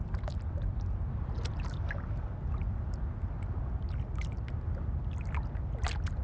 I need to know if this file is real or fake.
real